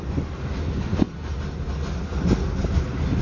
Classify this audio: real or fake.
real